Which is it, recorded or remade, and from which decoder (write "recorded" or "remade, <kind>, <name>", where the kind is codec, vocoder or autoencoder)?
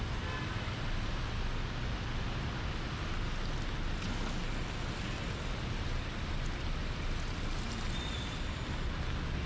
recorded